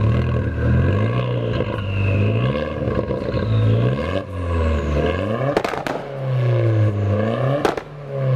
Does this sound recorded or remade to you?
recorded